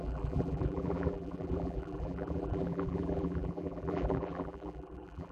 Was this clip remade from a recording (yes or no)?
yes